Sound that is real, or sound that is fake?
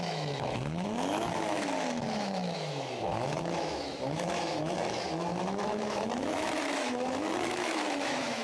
fake